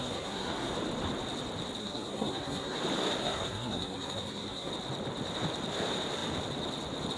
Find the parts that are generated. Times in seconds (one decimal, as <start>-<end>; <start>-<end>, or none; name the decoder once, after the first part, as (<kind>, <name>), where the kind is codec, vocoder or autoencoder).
0.0-0.7 (codec, SNAC); 1.8-2.8; 3.2-4.7